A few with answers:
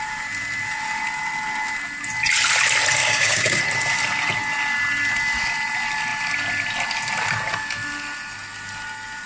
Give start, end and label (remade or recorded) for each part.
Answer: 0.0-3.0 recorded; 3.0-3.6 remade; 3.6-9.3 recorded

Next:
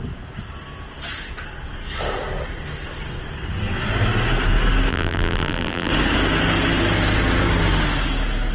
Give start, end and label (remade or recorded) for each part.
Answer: 0.0-4.9 recorded; 4.9-5.9 remade; 5.9-8.5 recorded

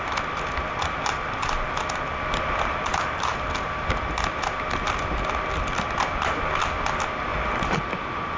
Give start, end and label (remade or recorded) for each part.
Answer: 0.0-8.4 recorded

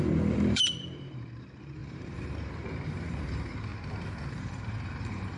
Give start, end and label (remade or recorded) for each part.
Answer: 0.0-3.7 remade; 3.7-4.3 recorded; 4.3-5.4 remade

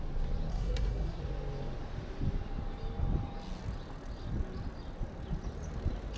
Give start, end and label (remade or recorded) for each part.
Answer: 0.0-0.5 recorded; 0.5-1.2 remade; 1.2-6.2 recorded